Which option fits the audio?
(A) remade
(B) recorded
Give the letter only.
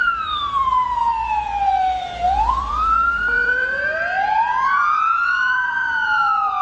A